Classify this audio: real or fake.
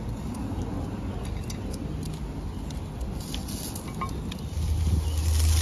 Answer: real